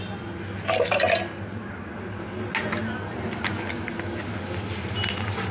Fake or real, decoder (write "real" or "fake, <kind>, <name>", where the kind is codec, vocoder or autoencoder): real